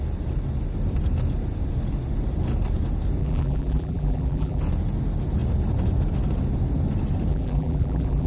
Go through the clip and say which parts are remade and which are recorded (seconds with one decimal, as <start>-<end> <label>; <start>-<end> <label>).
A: 0.0-3.2 recorded; 3.2-4.6 remade; 4.6-7.3 recorded; 7.3-8.3 remade